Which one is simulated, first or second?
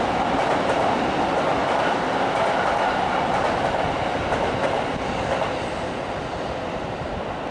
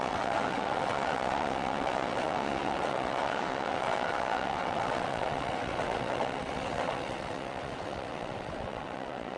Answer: second